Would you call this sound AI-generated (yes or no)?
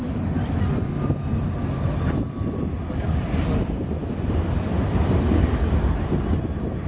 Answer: no